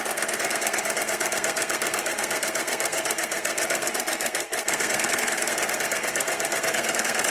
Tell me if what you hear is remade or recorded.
remade